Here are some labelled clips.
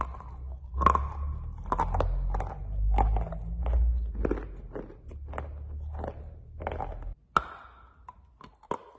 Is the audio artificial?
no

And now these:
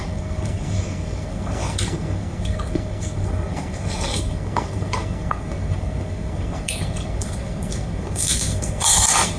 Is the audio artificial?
yes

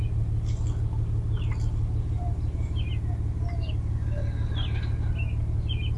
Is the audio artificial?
no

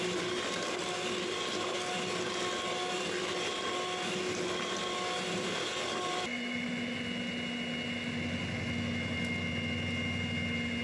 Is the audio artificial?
no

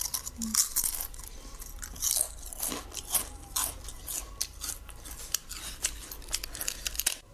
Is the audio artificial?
no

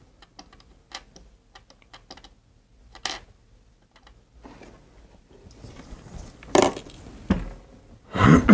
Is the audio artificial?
no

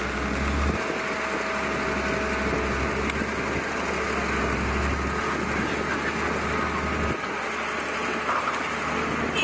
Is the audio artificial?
no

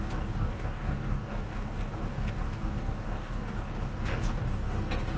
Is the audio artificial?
yes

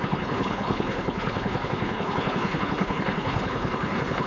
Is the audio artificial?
yes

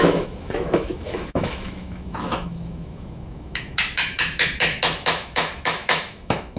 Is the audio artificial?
yes